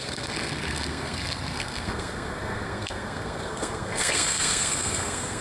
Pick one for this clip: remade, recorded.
remade